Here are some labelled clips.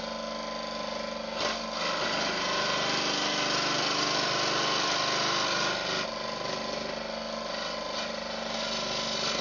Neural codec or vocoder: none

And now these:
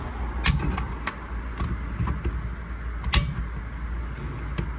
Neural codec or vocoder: none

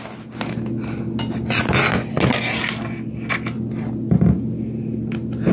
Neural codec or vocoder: none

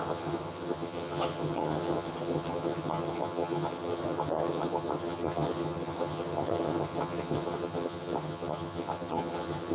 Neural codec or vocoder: vocoder, HiFi-GAN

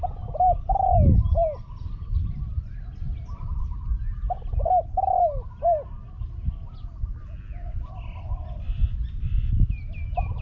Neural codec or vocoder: none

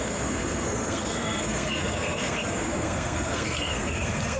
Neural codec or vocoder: codec, SNAC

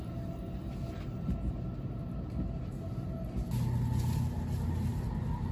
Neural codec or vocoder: none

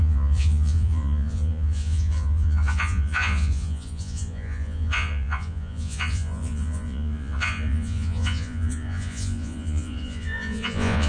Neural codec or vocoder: vocoder, Vocos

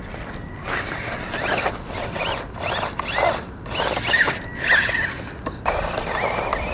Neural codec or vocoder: none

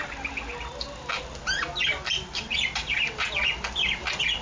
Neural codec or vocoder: none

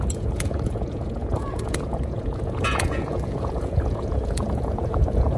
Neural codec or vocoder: vocoder, Vocos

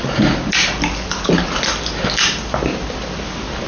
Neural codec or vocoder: none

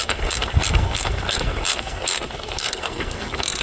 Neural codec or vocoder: codec, SNAC